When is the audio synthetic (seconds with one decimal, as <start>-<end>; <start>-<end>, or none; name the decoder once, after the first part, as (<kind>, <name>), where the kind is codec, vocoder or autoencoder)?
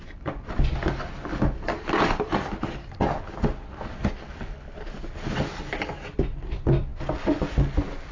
none